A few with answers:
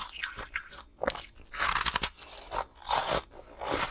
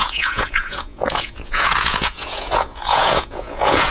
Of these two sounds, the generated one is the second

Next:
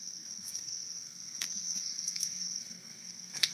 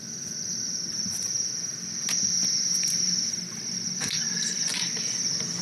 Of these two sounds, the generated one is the first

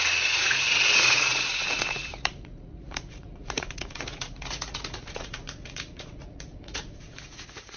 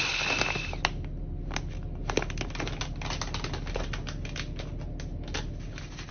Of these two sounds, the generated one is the first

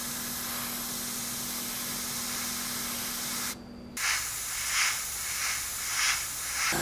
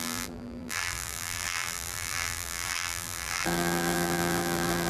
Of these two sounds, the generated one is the second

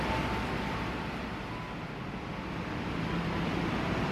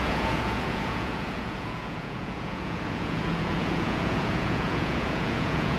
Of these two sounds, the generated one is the second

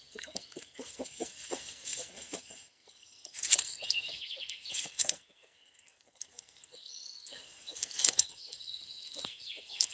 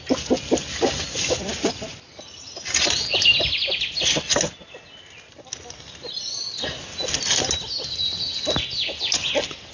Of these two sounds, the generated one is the first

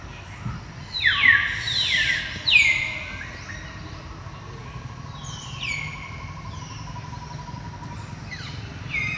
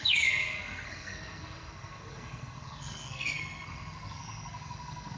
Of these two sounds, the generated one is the second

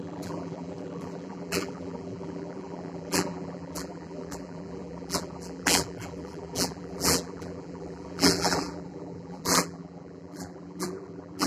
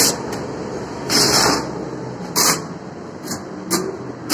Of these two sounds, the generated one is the first